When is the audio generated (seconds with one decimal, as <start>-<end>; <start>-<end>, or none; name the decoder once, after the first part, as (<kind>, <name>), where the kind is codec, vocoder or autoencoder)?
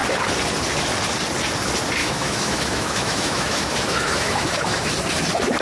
2.0-4.9 (autoencoder, DAC-VAE)